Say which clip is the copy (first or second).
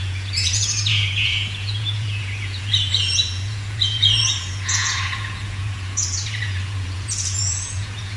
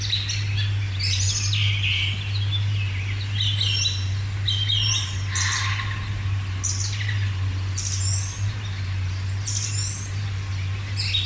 first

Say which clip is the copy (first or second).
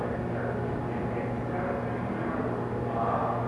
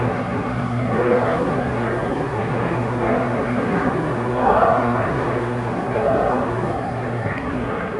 second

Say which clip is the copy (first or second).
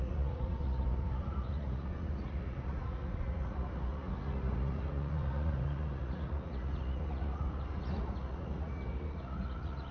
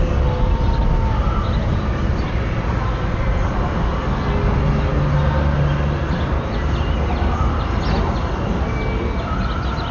first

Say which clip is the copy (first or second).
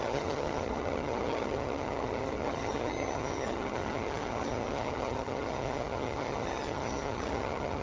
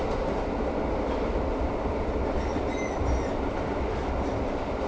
first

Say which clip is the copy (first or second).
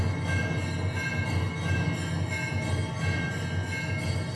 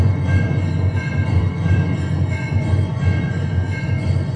second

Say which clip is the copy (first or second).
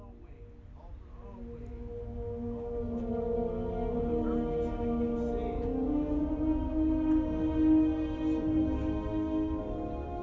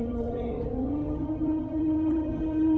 second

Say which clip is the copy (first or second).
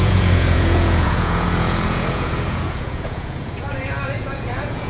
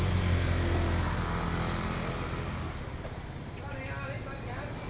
first